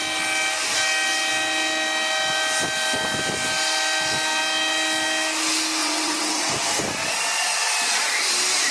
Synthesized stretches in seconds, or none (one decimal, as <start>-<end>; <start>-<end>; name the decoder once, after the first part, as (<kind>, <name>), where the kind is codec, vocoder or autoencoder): 5.8-6.5 (vocoder, WaveNeXt)